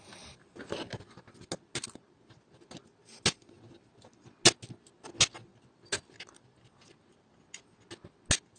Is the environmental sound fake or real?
real